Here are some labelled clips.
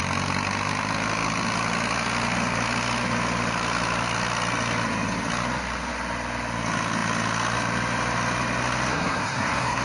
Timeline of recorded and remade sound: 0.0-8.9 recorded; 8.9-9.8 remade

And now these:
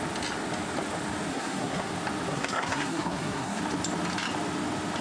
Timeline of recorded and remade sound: 0.0-1.3 recorded; 1.3-1.9 remade; 1.9-2.3 recorded; 2.3-3.6 remade; 3.6-5.0 recorded

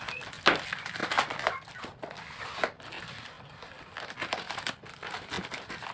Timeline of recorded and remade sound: 0.0-5.9 recorded